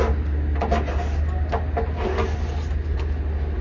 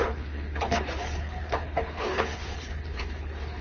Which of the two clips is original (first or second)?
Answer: first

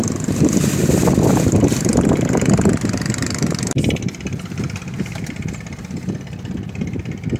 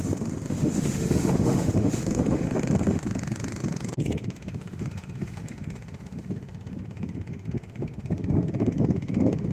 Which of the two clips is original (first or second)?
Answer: first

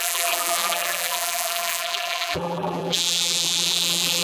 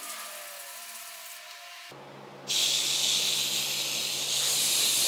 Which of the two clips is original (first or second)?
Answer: second